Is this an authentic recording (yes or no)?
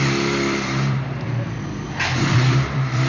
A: no